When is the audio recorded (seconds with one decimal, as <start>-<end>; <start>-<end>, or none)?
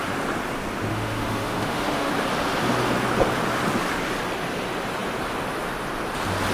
0.0-0.9; 2.1-6.5